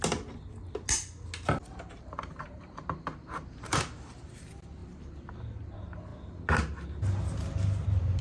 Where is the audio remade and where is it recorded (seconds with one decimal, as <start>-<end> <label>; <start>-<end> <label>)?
0.0-1.7 recorded; 1.7-4.1 remade; 4.1-4.8 recorded; 4.8-5.3 remade; 5.3-8.2 recorded

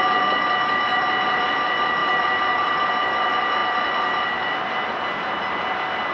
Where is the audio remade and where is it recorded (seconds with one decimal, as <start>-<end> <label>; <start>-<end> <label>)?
0.0-2.0 recorded; 2.0-2.9 remade; 2.9-6.1 recorded

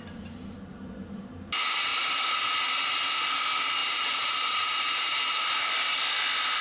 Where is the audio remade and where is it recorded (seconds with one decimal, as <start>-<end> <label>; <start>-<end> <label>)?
0.0-0.7 recorded; 0.7-1.3 remade; 1.3-3.8 recorded; 3.8-5.7 remade; 5.7-6.6 recorded

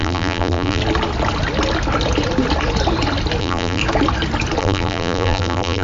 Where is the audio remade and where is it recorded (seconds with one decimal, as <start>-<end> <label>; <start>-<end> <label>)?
0.0-0.8 remade; 0.8-3.4 recorded; 3.4-3.8 remade; 3.8-4.6 recorded; 4.6-5.8 remade

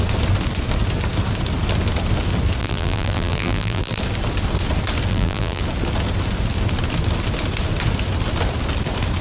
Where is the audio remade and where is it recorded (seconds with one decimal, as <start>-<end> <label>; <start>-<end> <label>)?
0.0-2.6 recorded; 2.6-4.0 remade; 4.0-5.1 recorded; 5.1-5.6 remade; 5.6-9.2 recorded

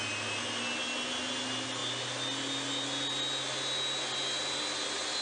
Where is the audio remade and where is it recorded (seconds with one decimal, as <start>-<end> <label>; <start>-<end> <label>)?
0.0-5.2 recorded

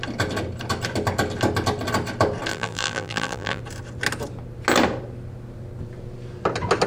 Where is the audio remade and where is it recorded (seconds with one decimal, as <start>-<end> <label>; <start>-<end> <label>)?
0.0-2.5 recorded; 2.5-3.6 remade; 3.6-6.9 recorded

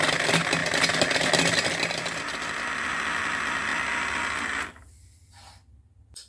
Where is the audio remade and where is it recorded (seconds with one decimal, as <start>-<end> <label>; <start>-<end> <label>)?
0.0-6.3 recorded